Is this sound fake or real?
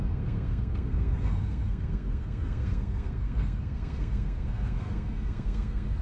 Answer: fake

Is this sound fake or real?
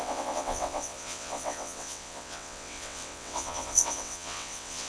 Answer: fake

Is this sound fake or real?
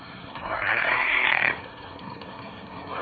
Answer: fake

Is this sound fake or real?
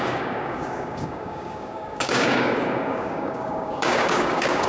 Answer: fake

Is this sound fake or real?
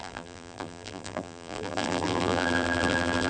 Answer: fake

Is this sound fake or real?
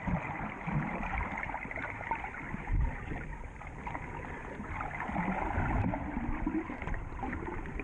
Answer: real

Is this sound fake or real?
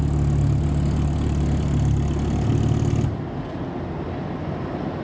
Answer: real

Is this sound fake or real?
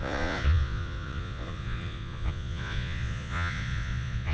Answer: fake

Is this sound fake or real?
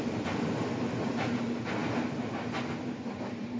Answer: real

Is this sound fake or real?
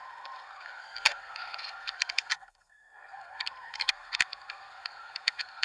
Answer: fake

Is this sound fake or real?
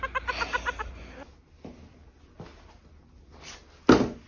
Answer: real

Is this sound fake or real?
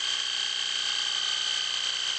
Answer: real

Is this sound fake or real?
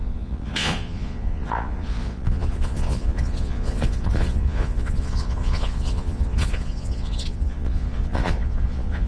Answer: fake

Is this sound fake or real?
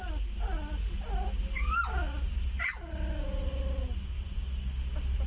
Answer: real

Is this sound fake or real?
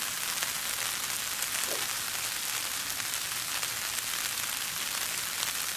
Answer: real